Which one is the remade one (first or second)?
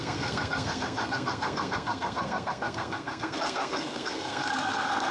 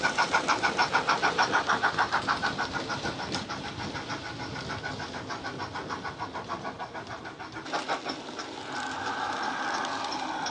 first